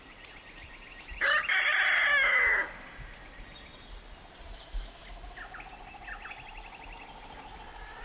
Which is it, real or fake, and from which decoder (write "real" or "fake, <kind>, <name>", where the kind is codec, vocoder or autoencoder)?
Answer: real